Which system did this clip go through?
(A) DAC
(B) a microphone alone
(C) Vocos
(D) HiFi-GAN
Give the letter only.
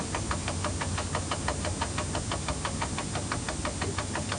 B